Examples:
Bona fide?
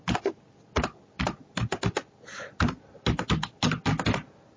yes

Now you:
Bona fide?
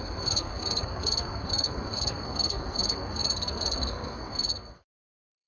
no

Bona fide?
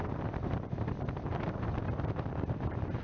no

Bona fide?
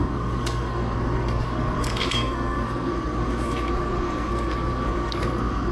no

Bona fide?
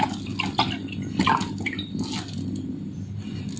yes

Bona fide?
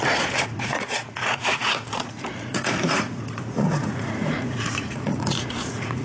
no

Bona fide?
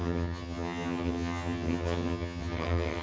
no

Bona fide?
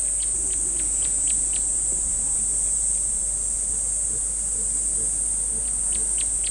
yes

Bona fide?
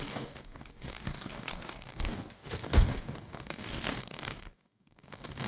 no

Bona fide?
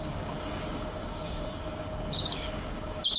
no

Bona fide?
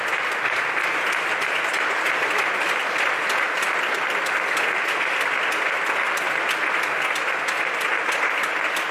yes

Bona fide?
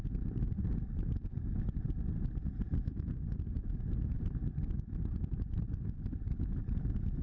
yes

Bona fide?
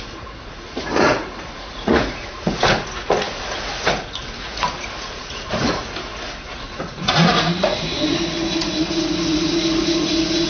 no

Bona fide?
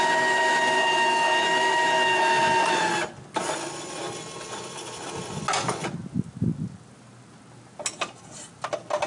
yes